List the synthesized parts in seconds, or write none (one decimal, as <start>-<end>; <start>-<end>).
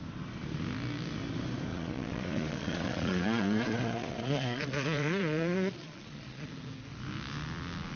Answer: 1.7-6.5